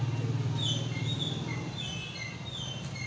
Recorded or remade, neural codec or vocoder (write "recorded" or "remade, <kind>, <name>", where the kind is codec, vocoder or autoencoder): recorded